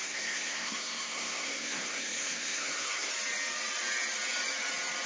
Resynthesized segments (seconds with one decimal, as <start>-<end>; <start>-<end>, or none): 0.0-3.1